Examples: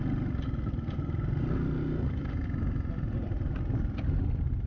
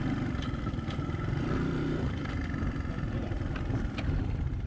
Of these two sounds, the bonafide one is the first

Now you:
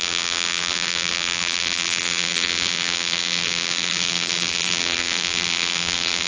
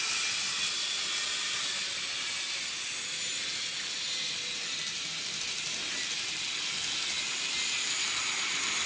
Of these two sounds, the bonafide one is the second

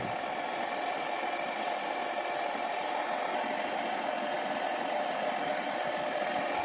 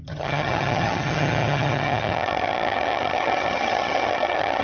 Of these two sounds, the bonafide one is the first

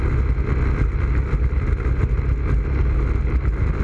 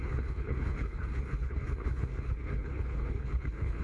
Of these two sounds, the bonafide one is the first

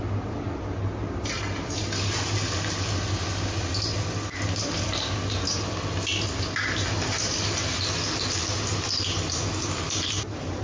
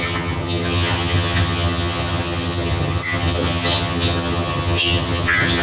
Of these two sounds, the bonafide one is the first